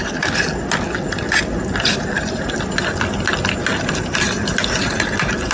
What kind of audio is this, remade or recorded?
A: recorded